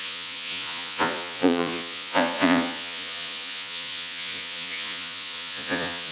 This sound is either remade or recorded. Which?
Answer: remade